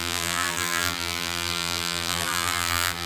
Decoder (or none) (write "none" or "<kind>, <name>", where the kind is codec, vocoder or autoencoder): vocoder, BigVGAN v2